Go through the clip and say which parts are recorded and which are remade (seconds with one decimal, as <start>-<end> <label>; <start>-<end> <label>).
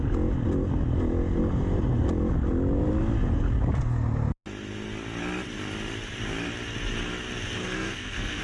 0.0-7.6 recorded; 7.6-8.4 remade